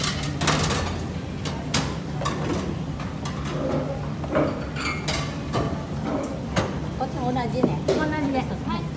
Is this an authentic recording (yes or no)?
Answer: yes